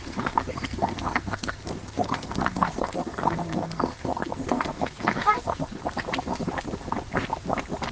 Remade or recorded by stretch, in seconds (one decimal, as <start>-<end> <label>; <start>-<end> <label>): 0.0-5.8 remade; 5.8-7.9 recorded